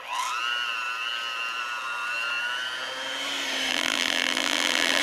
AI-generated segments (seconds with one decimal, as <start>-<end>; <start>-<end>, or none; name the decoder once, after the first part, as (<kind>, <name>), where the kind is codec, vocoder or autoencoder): 3.7-5.0 (vocoder, BigVGAN v2)